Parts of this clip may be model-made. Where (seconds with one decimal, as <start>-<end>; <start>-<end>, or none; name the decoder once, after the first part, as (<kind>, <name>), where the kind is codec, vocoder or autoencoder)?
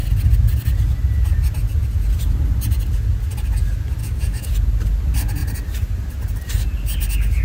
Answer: 4.0-4.5 (codec, DAC)